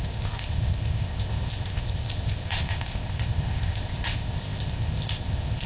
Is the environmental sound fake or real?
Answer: fake